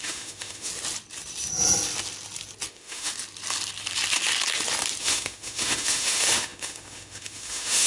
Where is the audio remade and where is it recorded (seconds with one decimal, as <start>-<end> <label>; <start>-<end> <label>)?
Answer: 0.0-0.7 remade; 0.7-2.7 recorded; 2.7-3.1 remade; 3.1-5.0 recorded; 5.0-7.9 remade